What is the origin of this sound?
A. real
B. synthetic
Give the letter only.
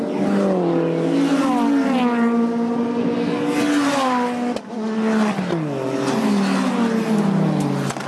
A